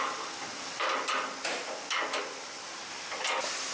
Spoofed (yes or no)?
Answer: no